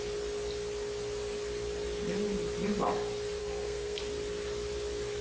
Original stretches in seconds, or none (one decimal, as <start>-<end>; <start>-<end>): 0.0-3.4; 4.0-5.2